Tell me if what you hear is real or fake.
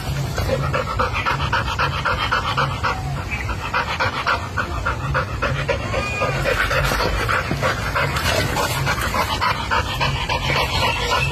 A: real